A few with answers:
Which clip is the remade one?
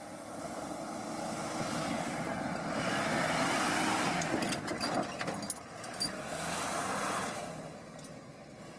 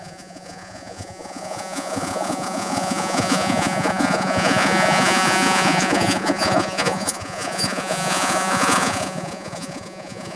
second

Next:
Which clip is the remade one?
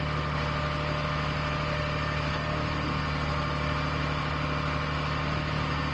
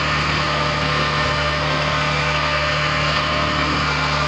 second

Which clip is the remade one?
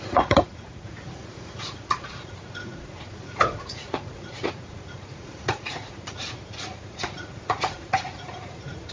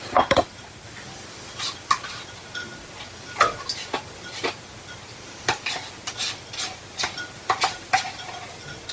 first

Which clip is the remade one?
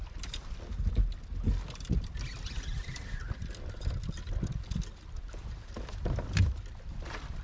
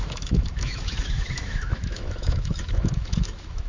second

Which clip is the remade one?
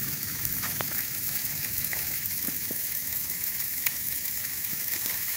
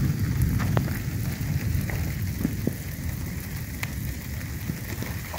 first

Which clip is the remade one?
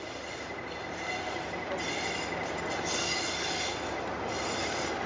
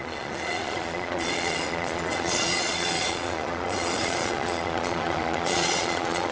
second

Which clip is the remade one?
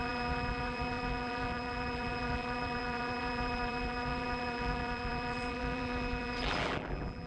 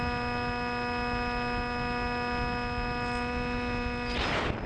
first